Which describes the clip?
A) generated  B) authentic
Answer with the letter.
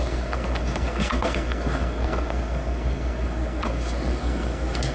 A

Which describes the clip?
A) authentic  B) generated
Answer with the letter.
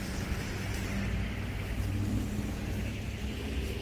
A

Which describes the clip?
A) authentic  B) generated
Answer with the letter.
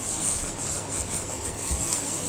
B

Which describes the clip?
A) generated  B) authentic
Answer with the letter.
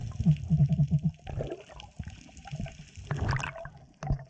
B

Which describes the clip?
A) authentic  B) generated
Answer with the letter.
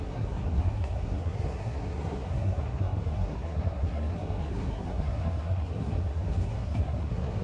B